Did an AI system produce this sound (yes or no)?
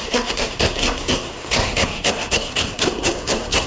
yes